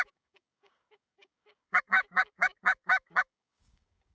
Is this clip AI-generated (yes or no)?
yes